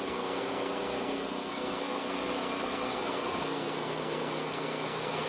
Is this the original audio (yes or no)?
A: no